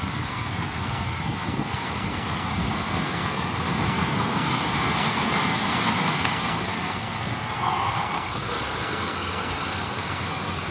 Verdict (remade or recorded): remade